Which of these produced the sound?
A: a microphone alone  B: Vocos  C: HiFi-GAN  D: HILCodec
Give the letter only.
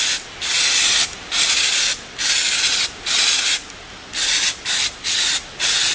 A